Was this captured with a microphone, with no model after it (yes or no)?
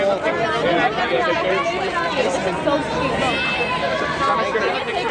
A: yes